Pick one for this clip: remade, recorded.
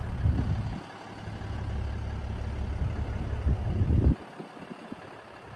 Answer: recorded